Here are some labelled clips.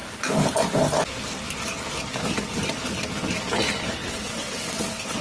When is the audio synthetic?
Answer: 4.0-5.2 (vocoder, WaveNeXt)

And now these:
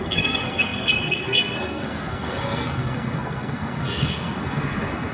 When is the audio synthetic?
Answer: 0.0-5.1 (codec, SNAC)

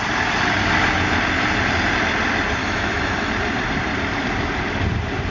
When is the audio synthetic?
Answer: 2.6-3.3 (autoencoder, DAC-VAE)

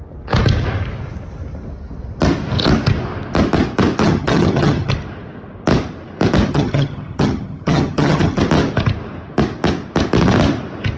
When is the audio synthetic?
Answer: 4.0-4.9 (vocoder, HiFi-GAN); 6.5-8.4

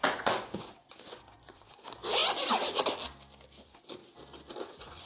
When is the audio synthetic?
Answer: 0.0-2.2 (vocoder, Vocos); 3.6-4.0; 4.5-5.1

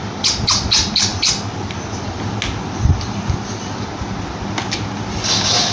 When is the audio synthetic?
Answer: none

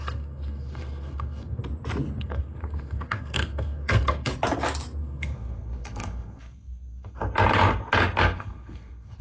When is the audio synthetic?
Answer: 0.0-1.6 (codec, SNAC); 2.2-4.3; 5.0-7.2; 8.2-9.2

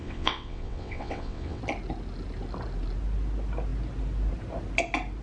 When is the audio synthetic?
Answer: 0.0-1.6 (vocoder, WaveNeXt)